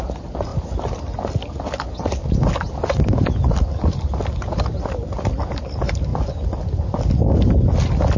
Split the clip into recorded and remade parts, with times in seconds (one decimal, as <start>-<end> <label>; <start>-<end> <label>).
0.0-8.2 recorded